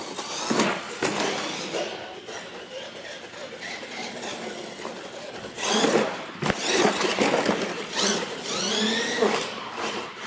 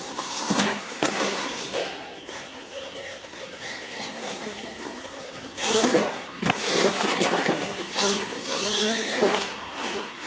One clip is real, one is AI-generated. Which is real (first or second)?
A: first